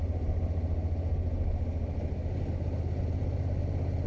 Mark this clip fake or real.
real